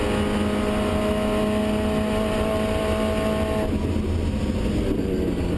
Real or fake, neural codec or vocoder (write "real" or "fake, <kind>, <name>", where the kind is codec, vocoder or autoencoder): real